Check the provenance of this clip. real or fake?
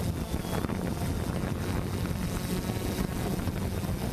real